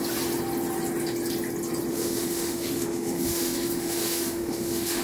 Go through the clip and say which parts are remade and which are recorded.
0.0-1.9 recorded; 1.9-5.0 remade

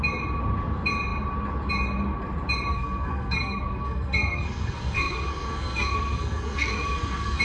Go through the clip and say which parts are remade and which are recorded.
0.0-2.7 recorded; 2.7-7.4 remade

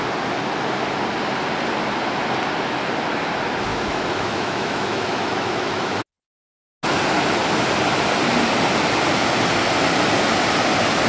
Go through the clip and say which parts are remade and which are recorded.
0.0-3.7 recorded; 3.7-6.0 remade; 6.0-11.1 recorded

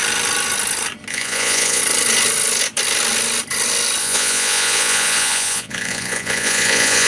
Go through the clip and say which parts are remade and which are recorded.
0.0-1.1 recorded; 1.1-1.8 remade; 1.8-4.0 recorded; 4.0-7.1 remade

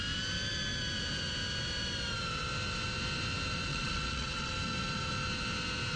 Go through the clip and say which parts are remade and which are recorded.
0.0-3.7 recorded; 3.7-4.5 remade; 4.5-6.0 recorded

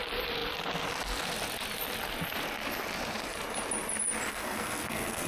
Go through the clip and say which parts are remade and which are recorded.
0.0-4.3 recorded; 4.3-5.3 remade